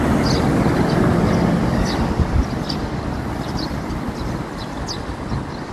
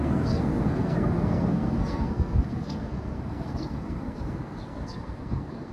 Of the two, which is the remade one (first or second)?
second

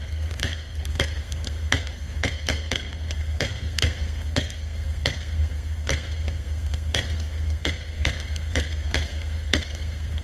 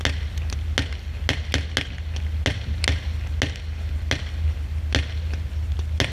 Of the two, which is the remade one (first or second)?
first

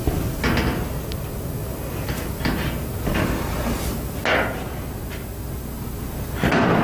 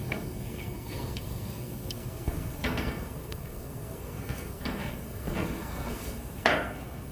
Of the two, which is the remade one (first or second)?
second